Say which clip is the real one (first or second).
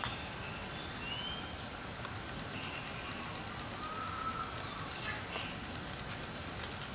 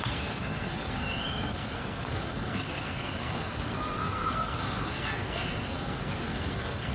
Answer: first